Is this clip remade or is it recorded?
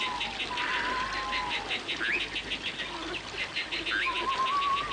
recorded